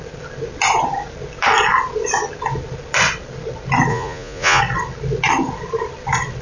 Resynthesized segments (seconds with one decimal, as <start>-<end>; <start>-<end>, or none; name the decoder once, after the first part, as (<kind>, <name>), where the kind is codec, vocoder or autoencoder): 3.9-4.6 (vocoder, Vocos)